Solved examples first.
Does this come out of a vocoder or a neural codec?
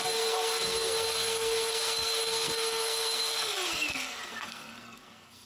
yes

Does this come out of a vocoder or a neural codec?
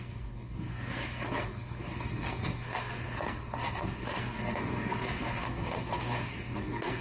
yes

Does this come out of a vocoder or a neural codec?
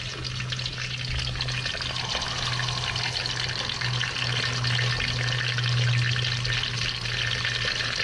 no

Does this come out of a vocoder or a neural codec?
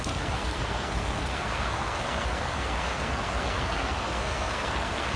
yes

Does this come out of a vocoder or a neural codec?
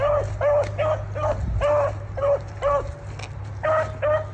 no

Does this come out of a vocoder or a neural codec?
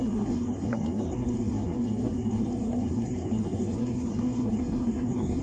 yes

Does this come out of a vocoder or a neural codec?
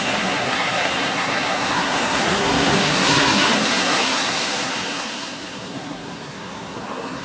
yes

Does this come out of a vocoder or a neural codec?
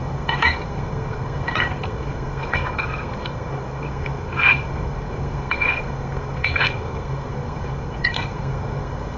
yes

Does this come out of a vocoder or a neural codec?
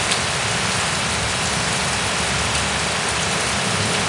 no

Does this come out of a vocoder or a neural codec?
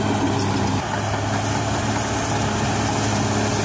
no